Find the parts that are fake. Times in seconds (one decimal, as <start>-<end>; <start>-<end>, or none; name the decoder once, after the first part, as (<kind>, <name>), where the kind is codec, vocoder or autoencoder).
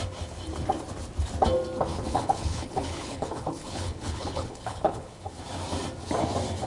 1.9-5.2 (codec, HILCodec)